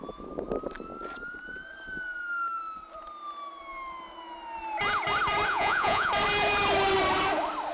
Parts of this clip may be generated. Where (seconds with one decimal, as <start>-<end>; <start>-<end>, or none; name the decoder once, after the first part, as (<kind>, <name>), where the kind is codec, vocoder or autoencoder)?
5.5-6.1 (vocoder, Vocos)